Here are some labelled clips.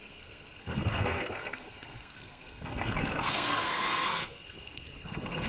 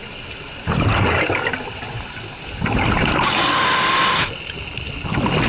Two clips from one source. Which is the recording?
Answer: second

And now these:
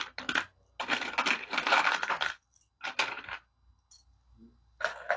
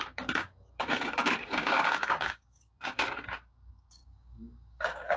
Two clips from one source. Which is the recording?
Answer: first